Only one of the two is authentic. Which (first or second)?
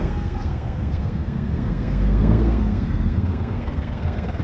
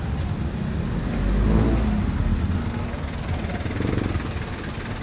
second